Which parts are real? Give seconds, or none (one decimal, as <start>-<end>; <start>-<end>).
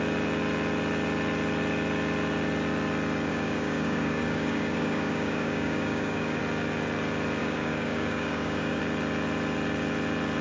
0.0-3.3; 6.4-7.4; 8.8-10.4